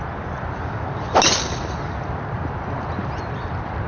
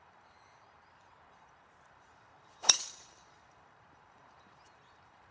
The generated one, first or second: second